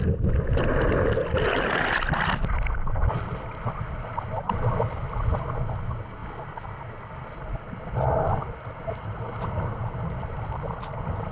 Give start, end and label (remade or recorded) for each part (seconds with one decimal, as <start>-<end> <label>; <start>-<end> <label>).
0.0-11.3 recorded